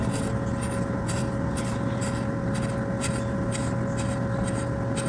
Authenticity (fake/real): real